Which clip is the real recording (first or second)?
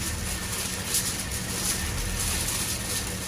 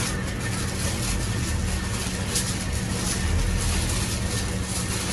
second